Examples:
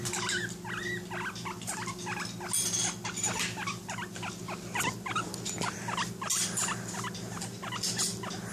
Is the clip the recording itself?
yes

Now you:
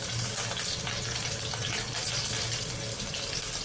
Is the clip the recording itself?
yes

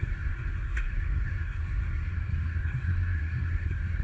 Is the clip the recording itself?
no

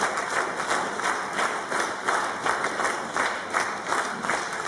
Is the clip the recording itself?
yes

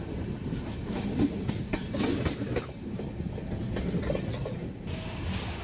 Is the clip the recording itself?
yes